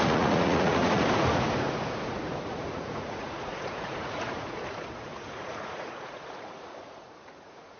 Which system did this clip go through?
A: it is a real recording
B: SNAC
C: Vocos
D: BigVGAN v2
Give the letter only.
C